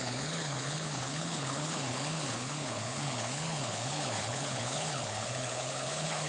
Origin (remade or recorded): remade